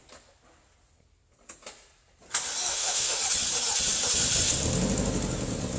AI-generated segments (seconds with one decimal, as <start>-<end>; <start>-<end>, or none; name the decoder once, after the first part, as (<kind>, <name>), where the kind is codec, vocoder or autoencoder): 2.7-3.2 (autoencoder, DAC-VAE)